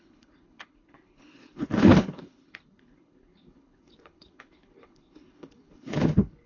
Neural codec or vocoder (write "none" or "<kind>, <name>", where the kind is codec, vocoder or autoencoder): codec, HILCodec